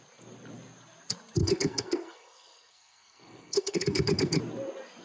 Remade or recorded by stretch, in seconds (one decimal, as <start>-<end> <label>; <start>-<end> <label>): 0.0-1.4 recorded; 1.4-4.4 remade; 4.4-5.0 recorded